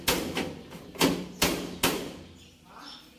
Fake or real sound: real